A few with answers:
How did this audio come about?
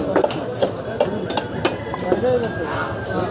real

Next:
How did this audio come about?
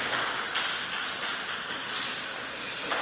real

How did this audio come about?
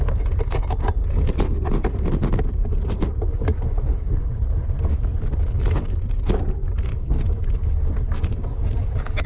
real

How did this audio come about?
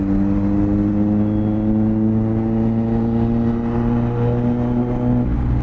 real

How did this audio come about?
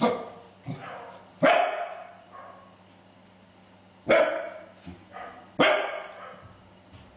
real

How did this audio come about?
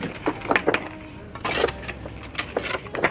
real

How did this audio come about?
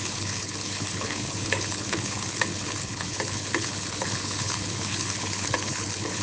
fake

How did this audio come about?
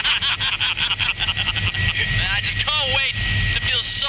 real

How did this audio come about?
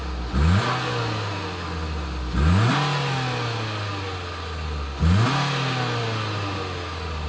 real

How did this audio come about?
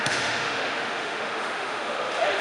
fake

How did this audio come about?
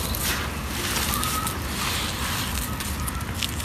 real